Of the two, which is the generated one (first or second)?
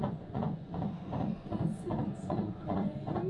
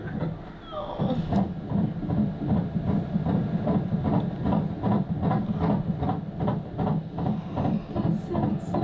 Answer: first